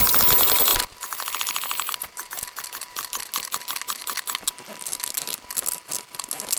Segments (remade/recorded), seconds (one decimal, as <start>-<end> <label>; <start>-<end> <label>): 0.0-6.6 recorded

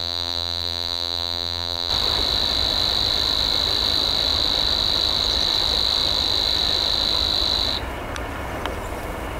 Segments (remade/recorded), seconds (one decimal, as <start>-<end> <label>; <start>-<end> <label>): 0.0-1.9 remade; 1.9-9.4 recorded

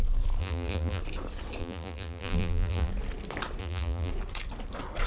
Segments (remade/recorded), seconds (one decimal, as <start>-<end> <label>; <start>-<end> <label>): 0.0-0.4 recorded; 0.4-1.0 remade; 1.0-1.6 recorded; 1.6-2.9 remade; 2.9-3.6 recorded; 3.6-4.1 remade; 4.1-5.1 recorded